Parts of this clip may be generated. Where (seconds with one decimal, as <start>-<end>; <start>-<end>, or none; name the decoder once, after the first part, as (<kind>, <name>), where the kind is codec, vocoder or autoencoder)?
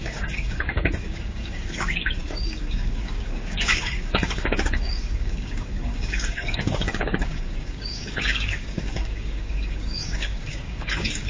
0.0-11.3 (codec, DAC)